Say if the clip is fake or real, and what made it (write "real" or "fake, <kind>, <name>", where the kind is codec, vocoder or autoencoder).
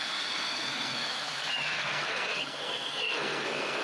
fake, codec, SNAC